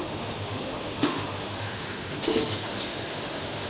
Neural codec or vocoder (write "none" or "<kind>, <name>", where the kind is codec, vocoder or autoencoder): autoencoder, DAC-VAE